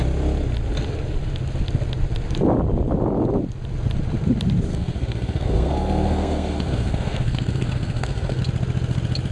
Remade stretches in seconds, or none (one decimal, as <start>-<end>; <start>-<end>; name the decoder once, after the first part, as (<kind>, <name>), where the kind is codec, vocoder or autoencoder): 4.7-8.4 (codec, SNAC)